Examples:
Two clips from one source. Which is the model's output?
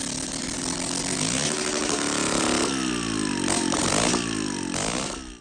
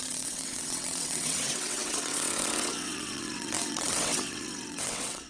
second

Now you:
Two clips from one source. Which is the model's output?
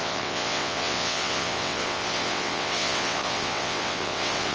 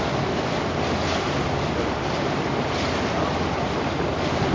first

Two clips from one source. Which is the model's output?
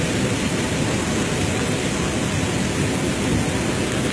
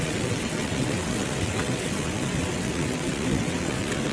second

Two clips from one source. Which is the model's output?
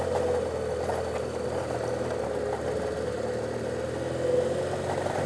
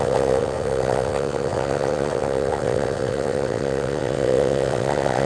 second